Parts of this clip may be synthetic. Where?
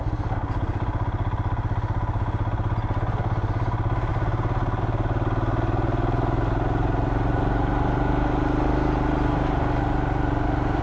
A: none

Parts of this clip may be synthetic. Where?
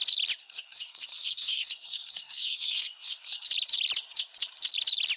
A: 0.4-3.5 (codec, SNAC)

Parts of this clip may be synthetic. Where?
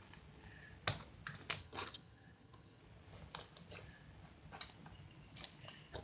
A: 1.6-2.8 (vocoder, HiFi-GAN)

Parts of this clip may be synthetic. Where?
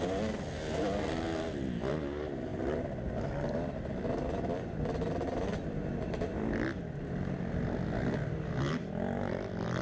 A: none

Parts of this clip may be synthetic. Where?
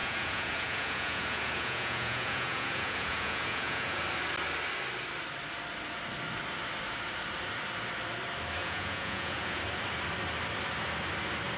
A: 0.0-4.0 (vocoder, Vocos); 8.6-9.6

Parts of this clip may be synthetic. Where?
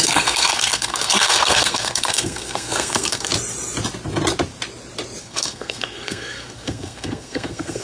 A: 0.0-3.3 (codec, SNAC); 5.2-7.8